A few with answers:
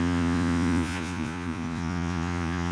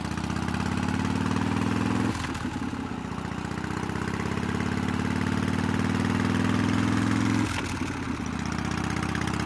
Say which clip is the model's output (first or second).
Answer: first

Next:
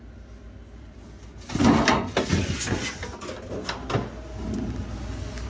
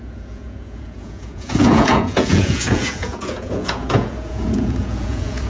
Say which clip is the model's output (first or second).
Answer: second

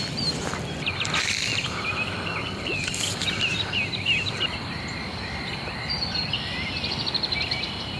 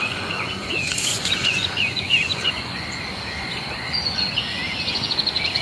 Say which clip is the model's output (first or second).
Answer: second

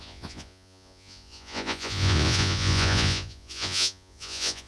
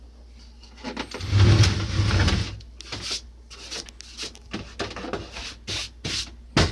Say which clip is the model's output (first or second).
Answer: first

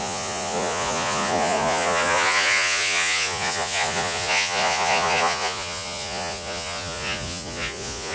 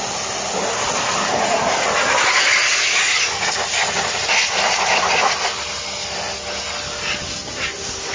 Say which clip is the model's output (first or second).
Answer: first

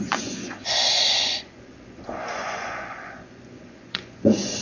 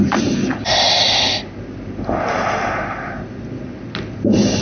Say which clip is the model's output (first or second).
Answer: first